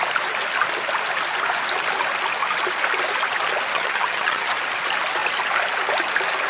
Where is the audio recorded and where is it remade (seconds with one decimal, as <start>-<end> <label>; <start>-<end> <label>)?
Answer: 0.0-3.7 recorded; 3.7-4.4 remade; 4.4-6.5 recorded